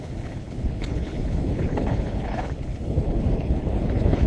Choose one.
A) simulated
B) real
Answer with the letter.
A